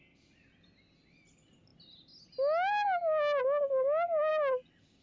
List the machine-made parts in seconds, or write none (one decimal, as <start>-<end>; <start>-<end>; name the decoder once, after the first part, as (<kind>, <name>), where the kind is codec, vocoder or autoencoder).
none